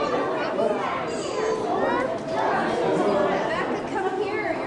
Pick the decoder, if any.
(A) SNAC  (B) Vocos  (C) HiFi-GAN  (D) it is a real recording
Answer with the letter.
D